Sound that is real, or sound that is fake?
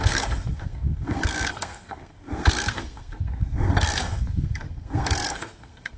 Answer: fake